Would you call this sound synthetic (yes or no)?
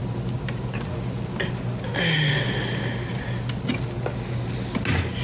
no